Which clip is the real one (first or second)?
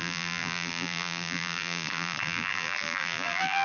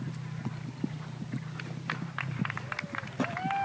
second